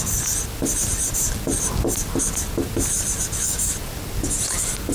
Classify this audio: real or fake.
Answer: real